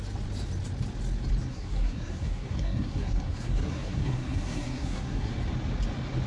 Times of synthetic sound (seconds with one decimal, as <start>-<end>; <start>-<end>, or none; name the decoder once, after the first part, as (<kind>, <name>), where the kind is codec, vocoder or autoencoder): 1.5-5.3 (codec, SNAC)